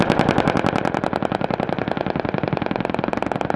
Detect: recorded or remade recorded